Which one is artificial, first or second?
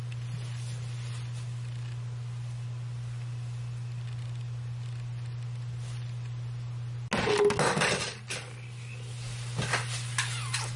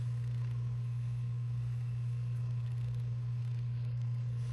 second